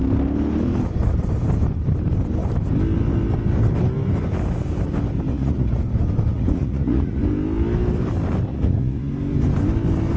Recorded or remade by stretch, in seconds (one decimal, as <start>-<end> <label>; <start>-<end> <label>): 0.0-5.3 recorded; 5.3-5.8 remade; 5.8-6.3 recorded; 6.3-7.2 remade; 7.2-8.5 recorded; 8.5-9.1 remade; 9.1-10.2 recorded